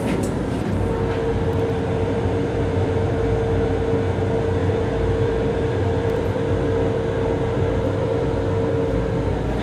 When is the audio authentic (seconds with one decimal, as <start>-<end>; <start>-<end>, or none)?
0.0-1.3; 3.1-4.6; 6.7-9.6